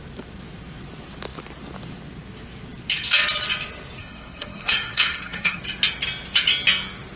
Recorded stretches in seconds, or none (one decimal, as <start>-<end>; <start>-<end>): 0.0-4.0; 5.6-7.2